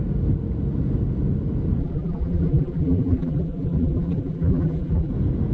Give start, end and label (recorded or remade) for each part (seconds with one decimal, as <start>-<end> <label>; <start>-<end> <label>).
0.0-1.8 recorded; 1.8-5.1 remade; 5.1-5.5 recorded